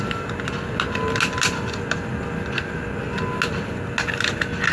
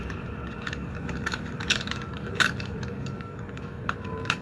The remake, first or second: second